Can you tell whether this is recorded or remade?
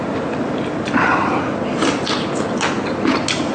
recorded